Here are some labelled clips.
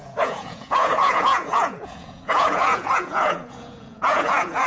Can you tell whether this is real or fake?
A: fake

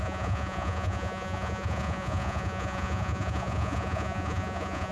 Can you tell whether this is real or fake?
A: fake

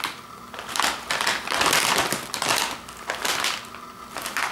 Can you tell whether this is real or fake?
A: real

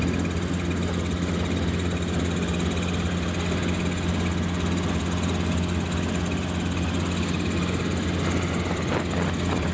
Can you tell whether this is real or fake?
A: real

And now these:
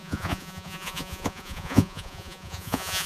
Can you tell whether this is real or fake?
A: fake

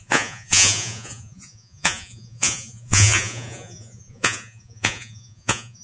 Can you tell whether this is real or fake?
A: fake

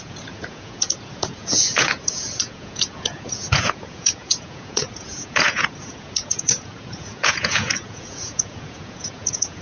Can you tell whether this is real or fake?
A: fake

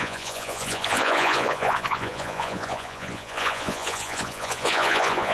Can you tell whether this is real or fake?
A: fake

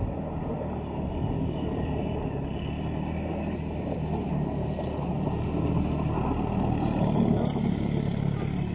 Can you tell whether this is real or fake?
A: real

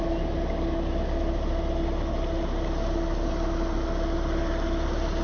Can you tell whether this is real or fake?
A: real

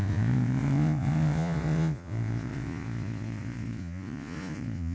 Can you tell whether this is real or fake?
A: fake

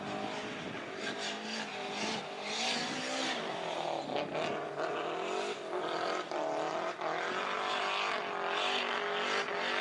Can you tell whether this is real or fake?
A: real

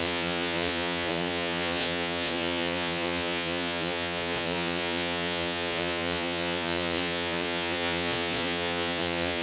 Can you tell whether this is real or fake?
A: fake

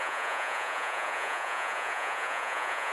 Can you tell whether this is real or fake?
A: fake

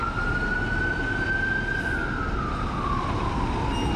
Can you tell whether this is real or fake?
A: real